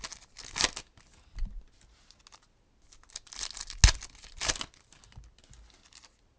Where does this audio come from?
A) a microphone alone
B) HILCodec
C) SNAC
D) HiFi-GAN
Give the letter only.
A